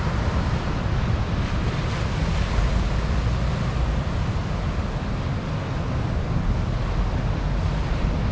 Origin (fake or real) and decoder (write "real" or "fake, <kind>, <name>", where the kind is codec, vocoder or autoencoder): real